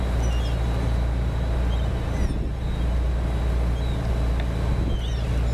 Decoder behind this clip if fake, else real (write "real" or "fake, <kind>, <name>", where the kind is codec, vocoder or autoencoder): real